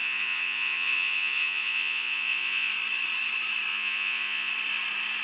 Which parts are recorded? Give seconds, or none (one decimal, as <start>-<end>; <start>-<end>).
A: 2.7-3.7; 4.5-5.2